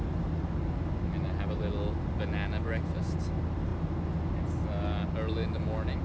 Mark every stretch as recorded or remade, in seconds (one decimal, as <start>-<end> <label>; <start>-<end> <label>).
0.0-6.0 recorded